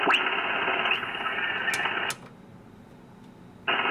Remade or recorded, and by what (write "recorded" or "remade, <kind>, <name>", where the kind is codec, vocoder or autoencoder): recorded